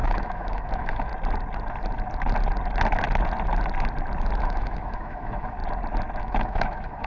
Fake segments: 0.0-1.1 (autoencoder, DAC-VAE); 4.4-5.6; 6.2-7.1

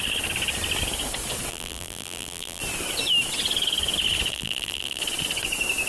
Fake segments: 1.5-2.6 (vocoder, BigVGAN v2); 4.3-5.0

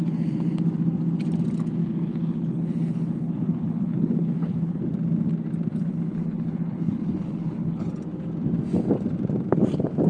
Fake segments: 1.8-4.8 (codec, HILCodec); 5.7-7.9

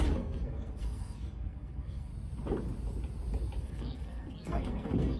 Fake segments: 0.0-2.1 (codec, SNAC); 3.6-5.2

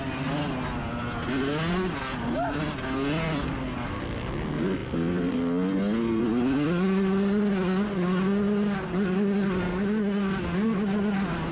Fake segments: none

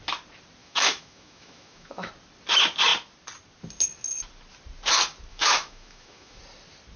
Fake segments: 0.6-2.1 (autoencoder, DAC-VAE); 5.3-6.4